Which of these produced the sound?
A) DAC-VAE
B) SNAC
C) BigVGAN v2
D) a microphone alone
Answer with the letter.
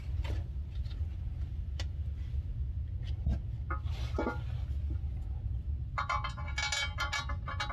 D